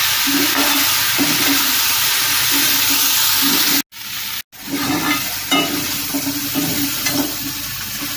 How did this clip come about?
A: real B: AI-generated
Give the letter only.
A